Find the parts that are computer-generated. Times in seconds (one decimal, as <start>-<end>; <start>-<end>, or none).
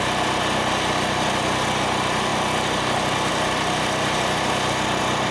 none